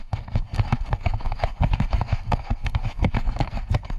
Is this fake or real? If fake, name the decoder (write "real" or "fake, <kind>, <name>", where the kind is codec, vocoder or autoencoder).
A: fake, codec, SNAC